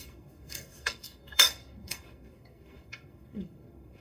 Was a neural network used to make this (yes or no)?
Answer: yes